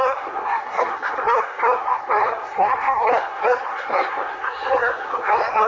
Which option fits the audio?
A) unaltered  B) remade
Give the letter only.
B